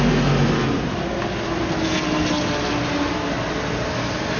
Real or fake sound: real